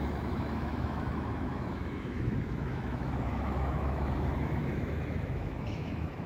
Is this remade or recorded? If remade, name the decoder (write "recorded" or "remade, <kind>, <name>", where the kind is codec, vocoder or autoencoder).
remade, autoencoder, DAC-VAE